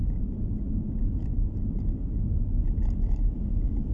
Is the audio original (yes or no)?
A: yes